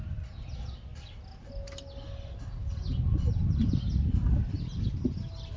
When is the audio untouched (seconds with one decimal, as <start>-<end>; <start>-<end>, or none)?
0.0-0.9; 1.5-5.6